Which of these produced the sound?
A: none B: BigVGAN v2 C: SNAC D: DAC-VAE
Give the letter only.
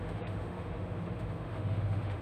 D